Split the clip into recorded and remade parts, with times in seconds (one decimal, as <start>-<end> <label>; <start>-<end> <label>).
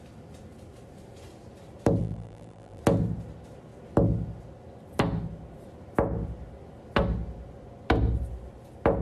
0.0-2.0 recorded; 2.0-2.8 remade; 2.8-9.0 recorded